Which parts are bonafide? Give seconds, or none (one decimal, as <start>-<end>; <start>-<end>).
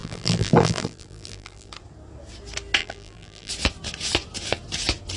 1.7-2.8; 3.5-5.2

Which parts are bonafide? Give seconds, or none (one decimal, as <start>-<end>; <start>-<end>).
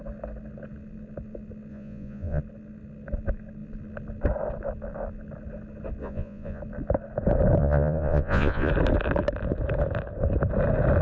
0.0-1.7; 2.4-6.0; 6.6-7.6; 8.7-11.0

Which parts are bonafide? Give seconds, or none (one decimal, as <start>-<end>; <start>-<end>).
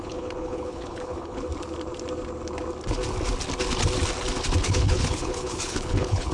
1.5-4.6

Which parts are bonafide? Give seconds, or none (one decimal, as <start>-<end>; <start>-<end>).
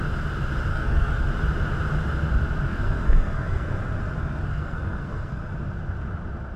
0.0-0.7; 1.3-2.7; 3.8-4.5; 5.4-6.6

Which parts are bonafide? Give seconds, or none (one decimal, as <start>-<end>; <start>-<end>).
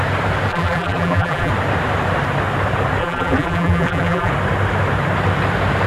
0.0-0.5; 1.5-3.0; 4.3-5.9